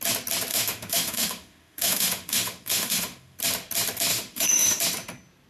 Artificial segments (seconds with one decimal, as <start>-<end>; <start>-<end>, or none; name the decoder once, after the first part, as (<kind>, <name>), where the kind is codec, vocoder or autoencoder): 0.5-3.4 (autoencoder, DAC-VAE); 4.1-4.8

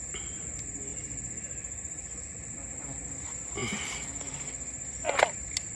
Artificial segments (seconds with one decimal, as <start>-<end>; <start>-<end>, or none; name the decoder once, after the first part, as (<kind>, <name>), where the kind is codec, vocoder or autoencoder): none

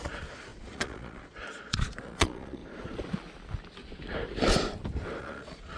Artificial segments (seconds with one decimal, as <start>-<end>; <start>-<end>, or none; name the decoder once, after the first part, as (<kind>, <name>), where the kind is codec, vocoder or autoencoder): 0.0-2.6 (vocoder, Vocos); 5.2-5.8

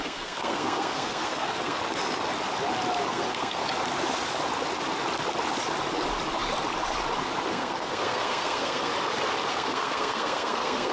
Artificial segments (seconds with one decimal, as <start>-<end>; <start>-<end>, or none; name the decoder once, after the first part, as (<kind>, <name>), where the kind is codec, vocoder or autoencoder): 0.0-1.8 (codec, SNAC); 3.1-3.6; 7.5-8.9; 9.5-10.9

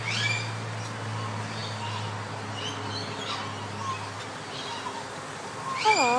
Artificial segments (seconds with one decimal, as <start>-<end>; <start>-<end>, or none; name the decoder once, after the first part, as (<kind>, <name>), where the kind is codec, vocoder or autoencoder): none

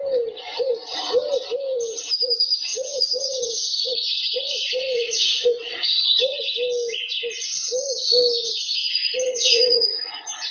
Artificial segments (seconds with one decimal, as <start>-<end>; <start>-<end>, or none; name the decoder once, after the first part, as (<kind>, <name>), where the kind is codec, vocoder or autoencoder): 2.7-6.4 (vocoder, Vocos); 8.4-10.1

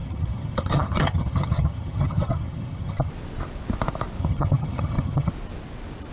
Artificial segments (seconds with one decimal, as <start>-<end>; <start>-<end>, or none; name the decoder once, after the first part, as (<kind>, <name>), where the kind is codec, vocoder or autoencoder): 0.0-3.1 (vocoder, HiFi-GAN); 4.2-5.3

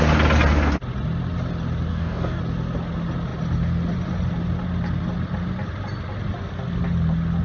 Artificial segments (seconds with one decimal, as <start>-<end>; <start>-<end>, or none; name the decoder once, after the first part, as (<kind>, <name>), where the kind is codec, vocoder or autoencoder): 1.9-2.4 (codec, DAC)